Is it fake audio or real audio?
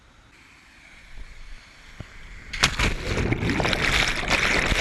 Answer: real